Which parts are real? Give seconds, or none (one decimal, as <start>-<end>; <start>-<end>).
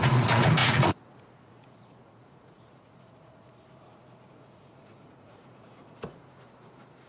none